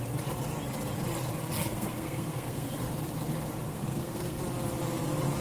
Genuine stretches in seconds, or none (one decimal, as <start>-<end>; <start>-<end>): 0.0-1.6; 2.9-3.7; 4.4-5.4

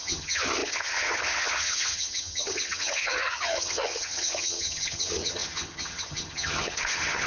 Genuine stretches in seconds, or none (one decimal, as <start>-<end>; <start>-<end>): none

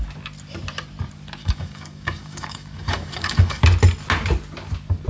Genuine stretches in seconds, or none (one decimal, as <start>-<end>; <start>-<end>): 0.0-1.4; 3.6-5.1